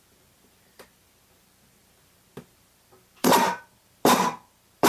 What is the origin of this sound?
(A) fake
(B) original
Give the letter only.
A